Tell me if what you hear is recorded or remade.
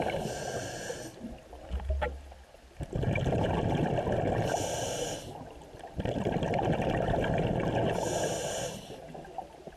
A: recorded